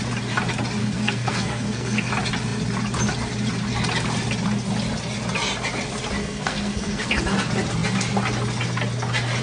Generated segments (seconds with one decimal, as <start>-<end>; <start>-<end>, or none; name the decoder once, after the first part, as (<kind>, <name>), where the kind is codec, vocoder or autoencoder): 0.8-2.1 (codec, SNAC); 6.2-7.2